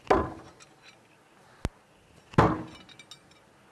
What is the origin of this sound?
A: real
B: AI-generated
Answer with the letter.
A